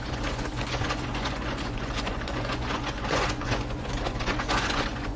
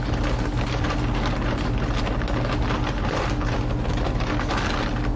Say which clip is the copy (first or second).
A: first